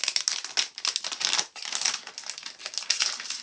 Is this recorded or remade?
recorded